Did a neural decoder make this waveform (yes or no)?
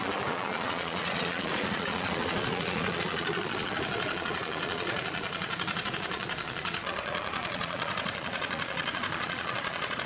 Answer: yes